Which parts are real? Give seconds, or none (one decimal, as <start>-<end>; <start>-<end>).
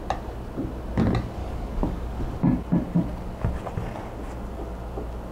0.0-1.4; 2.2-5.3